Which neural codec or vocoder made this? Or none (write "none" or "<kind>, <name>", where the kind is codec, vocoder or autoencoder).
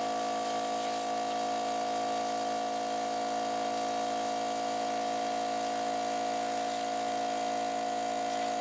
none